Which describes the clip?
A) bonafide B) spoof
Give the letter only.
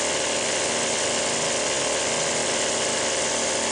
A